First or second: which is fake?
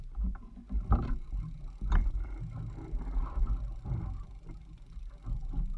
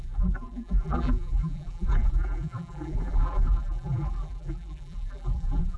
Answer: second